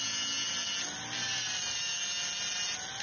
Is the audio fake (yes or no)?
no